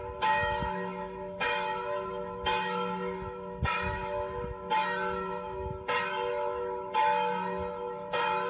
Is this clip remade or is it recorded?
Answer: remade